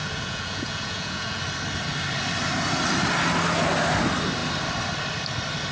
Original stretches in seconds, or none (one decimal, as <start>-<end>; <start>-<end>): 1.4-5.7